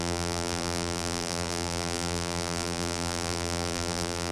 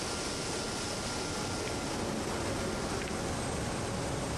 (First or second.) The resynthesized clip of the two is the first